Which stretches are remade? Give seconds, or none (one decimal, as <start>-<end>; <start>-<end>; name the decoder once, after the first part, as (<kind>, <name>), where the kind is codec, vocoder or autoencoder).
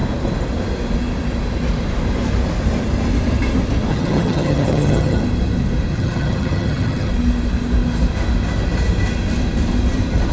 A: 3.9-5.2 (vocoder, HiFi-GAN); 5.9-7.1